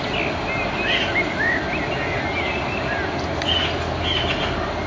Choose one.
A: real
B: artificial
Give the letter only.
A